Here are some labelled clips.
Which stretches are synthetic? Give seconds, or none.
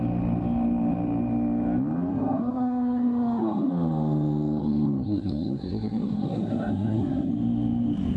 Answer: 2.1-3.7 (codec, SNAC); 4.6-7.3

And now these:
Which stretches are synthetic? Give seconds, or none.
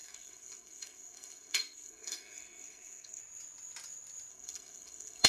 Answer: 0.0-3.2 (codec, SNAC); 4.3-5.3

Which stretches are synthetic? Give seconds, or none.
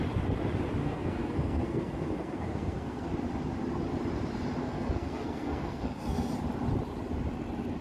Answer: 0.8-3.1 (codec, SNAC); 4.6-6.3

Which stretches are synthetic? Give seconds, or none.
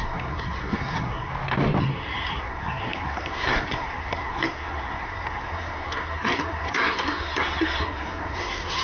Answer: 0.0-1.3 (codec, SNAC); 1.8-8.8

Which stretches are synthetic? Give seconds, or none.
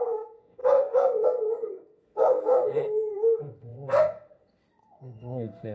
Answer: 0.0-5.7 (codec, SNAC)